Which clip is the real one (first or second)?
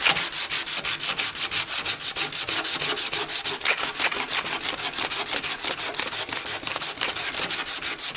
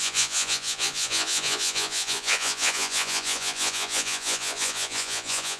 first